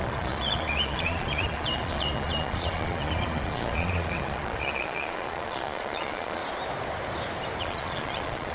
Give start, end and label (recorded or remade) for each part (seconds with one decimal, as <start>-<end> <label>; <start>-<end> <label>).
0.0-6.4 remade; 6.4-7.6 recorded; 7.6-8.5 remade

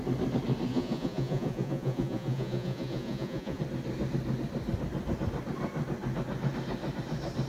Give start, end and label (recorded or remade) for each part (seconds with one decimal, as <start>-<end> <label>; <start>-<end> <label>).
0.0-0.7 recorded; 0.7-3.6 remade; 3.6-7.5 recorded

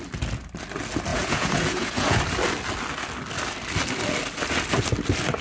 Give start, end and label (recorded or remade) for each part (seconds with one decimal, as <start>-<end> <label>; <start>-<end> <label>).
0.0-1.1 recorded; 1.1-2.2 remade; 2.2-5.4 recorded

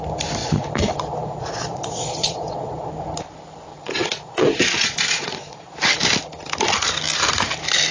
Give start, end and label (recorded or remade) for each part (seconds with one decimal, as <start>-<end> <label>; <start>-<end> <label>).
0.0-0.4 recorded; 0.4-2.9 remade; 2.9-3.7 recorded; 3.7-5.7 remade; 5.7-7.9 recorded